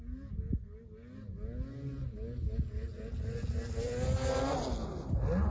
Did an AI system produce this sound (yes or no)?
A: no